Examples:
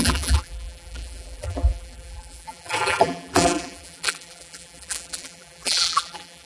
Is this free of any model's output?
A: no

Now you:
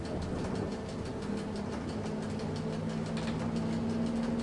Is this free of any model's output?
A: yes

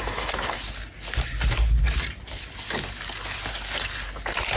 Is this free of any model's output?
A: yes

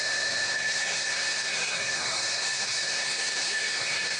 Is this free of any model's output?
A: no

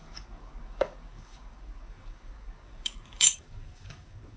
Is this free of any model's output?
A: no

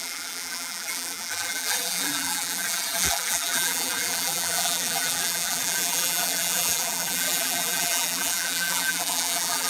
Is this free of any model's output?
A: no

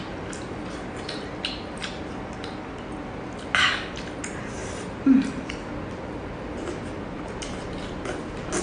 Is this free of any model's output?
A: yes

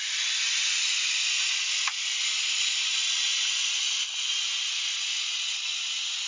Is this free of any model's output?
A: yes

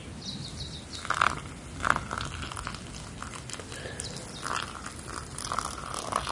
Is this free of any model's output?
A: yes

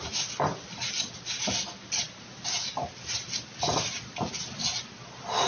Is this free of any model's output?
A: yes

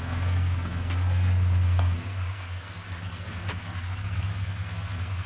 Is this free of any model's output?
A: no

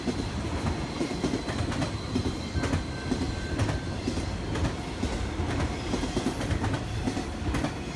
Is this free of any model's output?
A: yes